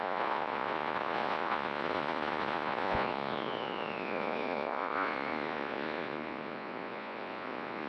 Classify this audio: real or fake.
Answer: fake